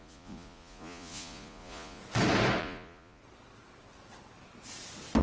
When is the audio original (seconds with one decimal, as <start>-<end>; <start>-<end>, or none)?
2.0-2.6; 3.2-5.2